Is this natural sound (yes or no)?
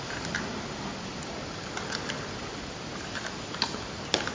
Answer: yes